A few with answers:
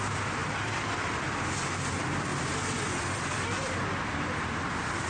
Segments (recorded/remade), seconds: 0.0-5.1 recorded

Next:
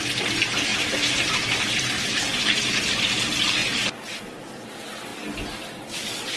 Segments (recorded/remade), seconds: 0.0-0.7 recorded; 0.7-3.1 remade; 3.1-3.6 recorded; 3.6-4.2 remade; 4.2-6.4 recorded

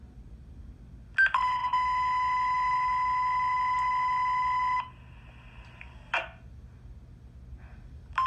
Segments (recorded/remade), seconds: 0.0-8.3 recorded